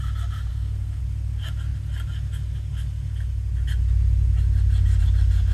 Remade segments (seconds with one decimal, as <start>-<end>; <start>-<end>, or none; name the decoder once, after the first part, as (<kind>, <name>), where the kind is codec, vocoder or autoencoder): 0.5-1.0 (codec, SNAC)